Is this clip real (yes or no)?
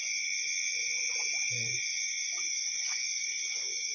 no